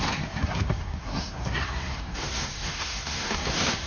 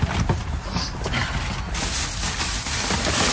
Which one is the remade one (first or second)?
first